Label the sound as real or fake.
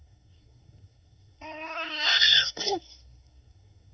fake